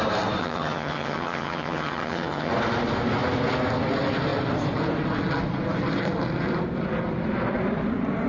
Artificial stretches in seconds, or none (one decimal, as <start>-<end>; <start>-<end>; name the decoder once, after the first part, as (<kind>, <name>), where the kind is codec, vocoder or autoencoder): 0.4-2.5 (vocoder, HiFi-GAN)